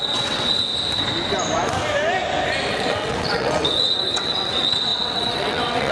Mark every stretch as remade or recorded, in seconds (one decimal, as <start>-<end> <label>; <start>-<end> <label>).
0.0-0.7 remade; 0.7-2.7 recorded; 2.7-5.9 remade